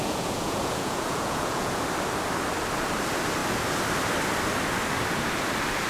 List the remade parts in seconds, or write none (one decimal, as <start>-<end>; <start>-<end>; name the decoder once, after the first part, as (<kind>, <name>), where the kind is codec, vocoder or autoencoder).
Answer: 0.0-1.8 (vocoder, Vocos)

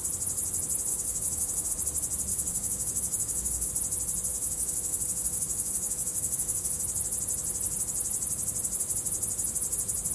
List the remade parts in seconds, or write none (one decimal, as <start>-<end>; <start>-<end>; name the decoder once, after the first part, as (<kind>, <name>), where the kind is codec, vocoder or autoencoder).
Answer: 0.9-1.7 (autoencoder, DAC-VAE); 2.3-3.7; 4.3-6.8

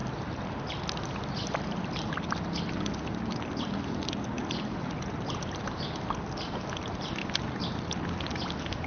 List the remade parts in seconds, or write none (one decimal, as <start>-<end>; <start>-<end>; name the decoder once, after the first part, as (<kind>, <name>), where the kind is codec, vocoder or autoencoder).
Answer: none

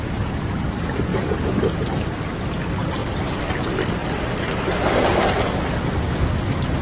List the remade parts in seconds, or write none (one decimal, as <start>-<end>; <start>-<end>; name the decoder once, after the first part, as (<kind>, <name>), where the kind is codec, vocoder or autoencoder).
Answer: 3.0-3.6 (vocoder, BigVGAN v2); 4.0-5.5

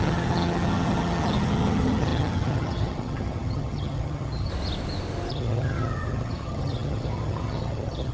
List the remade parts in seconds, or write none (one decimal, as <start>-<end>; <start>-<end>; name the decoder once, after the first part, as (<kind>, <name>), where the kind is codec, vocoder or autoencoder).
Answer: 0.0-4.5 (vocoder, HiFi-GAN); 5.3-8.1

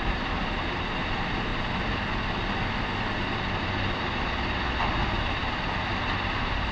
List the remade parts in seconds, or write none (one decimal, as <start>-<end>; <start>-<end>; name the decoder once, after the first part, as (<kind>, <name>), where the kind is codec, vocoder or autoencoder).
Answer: 5.9-6.7 (vocoder, BigVGAN v2)

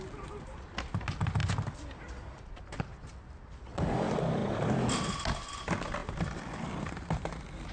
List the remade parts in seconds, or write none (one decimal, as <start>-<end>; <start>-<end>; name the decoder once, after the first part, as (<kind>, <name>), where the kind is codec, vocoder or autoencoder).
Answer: none

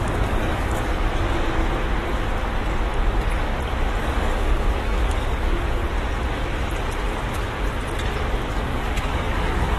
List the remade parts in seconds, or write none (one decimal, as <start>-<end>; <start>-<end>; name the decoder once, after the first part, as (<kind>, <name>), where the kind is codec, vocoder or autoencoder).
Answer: 0.0-1.1 (codec, DAC); 4.0-5.8; 8.5-9.8